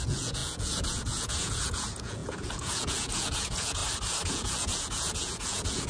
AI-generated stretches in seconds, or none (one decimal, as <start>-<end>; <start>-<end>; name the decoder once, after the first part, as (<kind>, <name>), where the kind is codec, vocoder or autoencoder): 0.0-3.8 (vocoder, Vocos); 4.3-5.9